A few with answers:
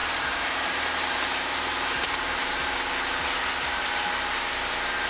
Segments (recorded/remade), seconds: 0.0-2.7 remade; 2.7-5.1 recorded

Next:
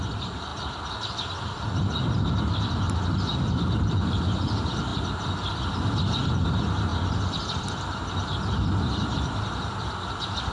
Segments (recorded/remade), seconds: 0.0-0.5 recorded; 0.5-4.2 remade; 4.2-6.9 recorded; 6.9-7.7 remade; 7.7-10.5 recorded

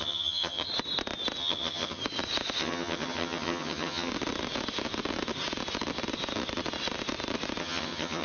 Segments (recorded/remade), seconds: 0.0-0.7 remade; 0.7-1.4 recorded; 1.4-2.0 remade; 2.0-2.6 recorded; 2.6-4.1 remade; 4.1-7.6 recorded; 7.6-8.2 remade

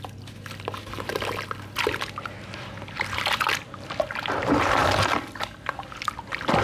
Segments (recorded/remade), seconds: 0.0-6.6 recorded

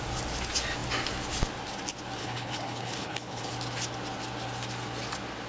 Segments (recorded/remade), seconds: 0.0-2.2 recorded; 2.2-3.5 remade; 3.5-5.5 recorded

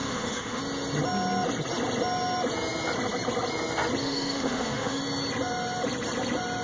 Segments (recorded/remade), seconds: 0.0-0.6 remade; 0.6-4.0 recorded; 4.0-5.0 remade; 5.0-6.6 recorded

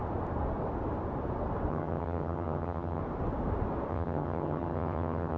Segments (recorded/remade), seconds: 0.0-1.7 recorded; 1.7-3.0 remade; 3.0-3.9 recorded; 3.9-5.4 remade

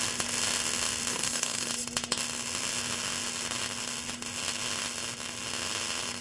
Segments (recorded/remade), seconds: 0.0-1.1 recorded; 1.1-1.7 remade; 1.7-6.2 recorded